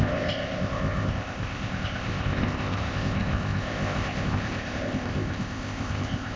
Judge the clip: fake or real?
fake